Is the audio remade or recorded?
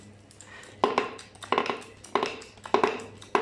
recorded